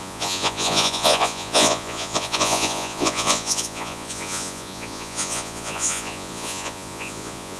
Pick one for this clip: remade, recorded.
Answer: remade